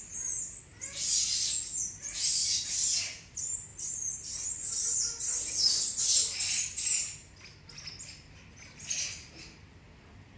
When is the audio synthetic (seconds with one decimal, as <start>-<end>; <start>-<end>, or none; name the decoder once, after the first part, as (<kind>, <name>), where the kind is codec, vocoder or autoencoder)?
none